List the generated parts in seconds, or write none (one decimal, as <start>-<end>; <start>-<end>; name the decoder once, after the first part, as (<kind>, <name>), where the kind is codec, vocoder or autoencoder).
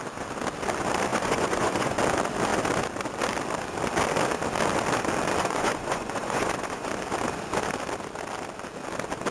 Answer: 1.1-2.0 (vocoder, Vocos); 5.4-6.9